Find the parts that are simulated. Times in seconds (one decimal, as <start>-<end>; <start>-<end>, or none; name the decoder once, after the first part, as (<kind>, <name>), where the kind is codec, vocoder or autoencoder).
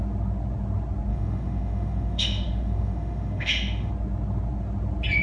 1.1-3.9 (autoencoder, DAC-VAE)